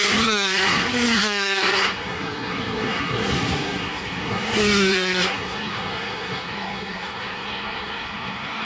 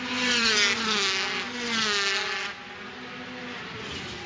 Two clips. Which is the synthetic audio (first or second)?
first